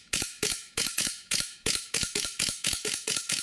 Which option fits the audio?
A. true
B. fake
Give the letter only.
B